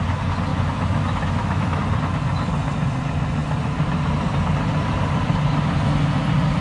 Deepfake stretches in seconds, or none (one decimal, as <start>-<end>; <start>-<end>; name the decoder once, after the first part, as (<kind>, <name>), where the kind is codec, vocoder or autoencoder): 0.5-1.8 (autoencoder, DAC-VAE)